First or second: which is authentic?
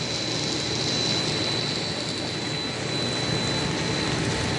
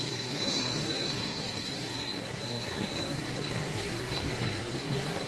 first